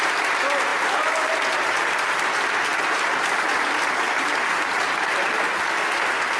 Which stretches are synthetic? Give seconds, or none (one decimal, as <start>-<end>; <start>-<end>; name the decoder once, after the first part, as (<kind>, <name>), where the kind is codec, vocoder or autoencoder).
none